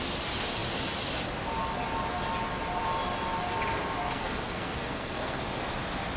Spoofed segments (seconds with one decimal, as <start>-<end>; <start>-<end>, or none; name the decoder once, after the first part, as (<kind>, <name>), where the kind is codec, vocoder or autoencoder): 4.0-5.4 (codec, SNAC)